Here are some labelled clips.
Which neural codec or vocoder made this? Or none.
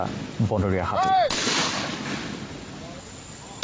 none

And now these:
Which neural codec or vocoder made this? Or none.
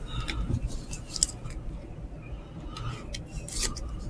none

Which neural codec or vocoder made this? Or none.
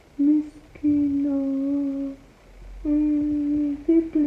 none